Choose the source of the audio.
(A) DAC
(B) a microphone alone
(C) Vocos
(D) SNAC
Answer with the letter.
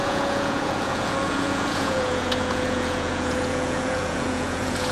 C